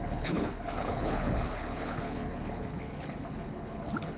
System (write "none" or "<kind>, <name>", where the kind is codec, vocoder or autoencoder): codec, HILCodec